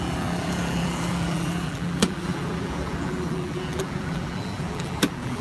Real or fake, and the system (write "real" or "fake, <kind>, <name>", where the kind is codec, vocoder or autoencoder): fake, vocoder, BigVGAN v2